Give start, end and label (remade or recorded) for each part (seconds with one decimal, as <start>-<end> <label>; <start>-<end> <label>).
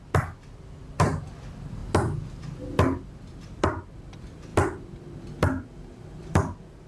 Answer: 0.0-6.9 recorded